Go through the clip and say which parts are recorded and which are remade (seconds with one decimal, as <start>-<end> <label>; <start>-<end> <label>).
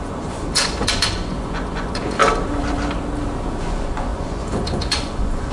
0.0-2.2 remade; 2.2-3.6 recorded; 3.6-5.5 remade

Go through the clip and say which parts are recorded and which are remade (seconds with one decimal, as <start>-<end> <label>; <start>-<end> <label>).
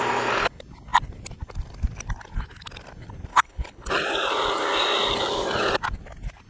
0.0-3.3 recorded; 3.3-3.9 remade; 3.9-6.5 recorded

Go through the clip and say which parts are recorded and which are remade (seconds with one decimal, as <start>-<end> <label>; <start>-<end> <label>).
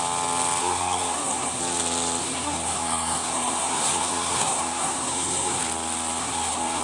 0.0-0.6 recorded; 0.6-1.6 remade; 1.6-2.2 recorded; 2.2-5.6 remade; 5.6-6.2 recorded; 6.2-6.8 remade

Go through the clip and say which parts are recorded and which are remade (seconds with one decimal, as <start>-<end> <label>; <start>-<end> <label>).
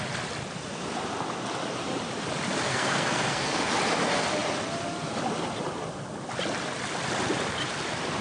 0.0-2.7 recorded; 2.7-3.7 remade; 3.7-8.2 recorded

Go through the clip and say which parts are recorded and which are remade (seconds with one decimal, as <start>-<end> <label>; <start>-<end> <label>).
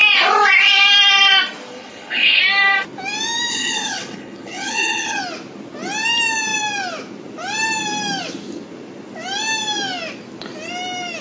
0.0-1.7 recorded; 1.7-2.4 remade; 2.4-3.5 recorded; 3.5-5.2 remade; 5.2-11.2 recorded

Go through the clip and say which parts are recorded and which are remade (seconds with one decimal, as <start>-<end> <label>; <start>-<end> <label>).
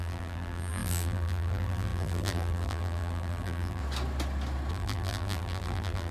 0.0-3.8 remade; 3.8-4.7 recorded; 4.7-6.1 remade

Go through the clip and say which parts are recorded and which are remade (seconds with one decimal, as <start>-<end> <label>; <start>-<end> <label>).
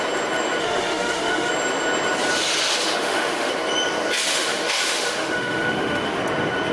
0.0-0.6 recorded; 0.6-1.5 remade; 1.5-2.7 recorded; 2.7-3.5 remade; 3.5-4.3 recorded; 4.3-6.2 remade; 6.2-6.7 recorded